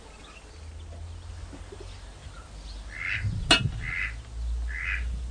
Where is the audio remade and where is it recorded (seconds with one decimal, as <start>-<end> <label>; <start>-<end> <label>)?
0.0-5.3 recorded